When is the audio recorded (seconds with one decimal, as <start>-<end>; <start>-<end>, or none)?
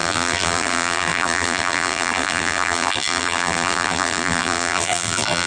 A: none